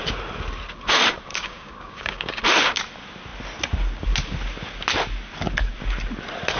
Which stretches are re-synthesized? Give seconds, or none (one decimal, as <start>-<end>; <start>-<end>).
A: 1.3-2.4